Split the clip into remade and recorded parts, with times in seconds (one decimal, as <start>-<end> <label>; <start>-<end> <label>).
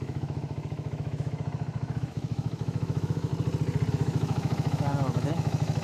0.0-3.3 remade; 3.3-3.9 recorded; 3.9-5.8 remade